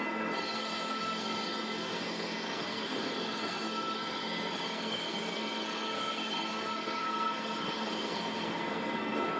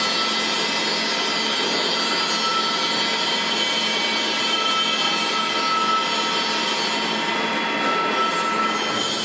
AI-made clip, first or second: first